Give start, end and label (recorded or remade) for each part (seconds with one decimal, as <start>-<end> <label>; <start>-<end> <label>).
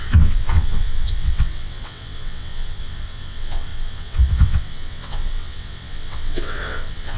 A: 0.0-7.2 remade